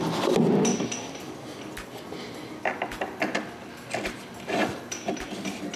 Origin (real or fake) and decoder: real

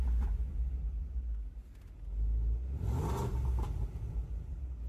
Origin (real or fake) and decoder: real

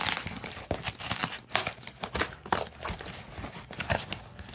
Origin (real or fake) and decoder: real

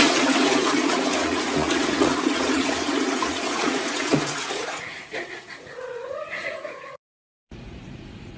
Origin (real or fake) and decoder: fake, vocoder, Vocos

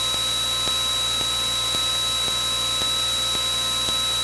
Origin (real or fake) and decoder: real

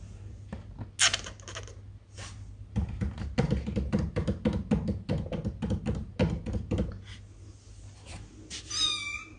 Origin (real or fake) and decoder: real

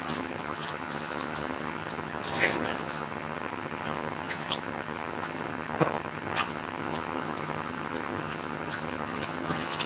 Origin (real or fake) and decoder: fake, vocoder, HiFi-GAN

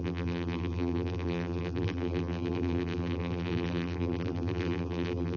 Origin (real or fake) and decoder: fake, vocoder, BigVGAN v2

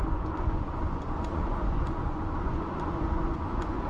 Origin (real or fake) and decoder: fake, vocoder, Vocos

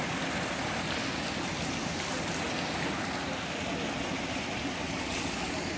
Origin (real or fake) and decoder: real